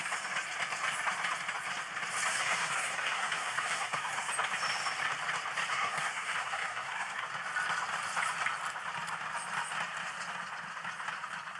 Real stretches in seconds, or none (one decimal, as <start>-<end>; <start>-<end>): 0.0-2.3; 4.3-5.7; 7.2-11.6